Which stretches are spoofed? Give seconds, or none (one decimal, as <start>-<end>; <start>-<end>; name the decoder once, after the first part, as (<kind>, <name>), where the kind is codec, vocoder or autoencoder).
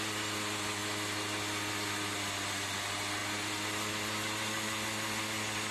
none